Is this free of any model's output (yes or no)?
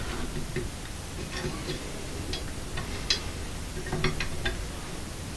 yes